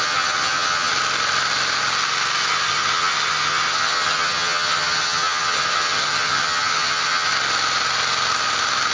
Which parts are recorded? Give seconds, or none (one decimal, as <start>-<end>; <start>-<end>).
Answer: 0.9-2.5; 7.3-8.9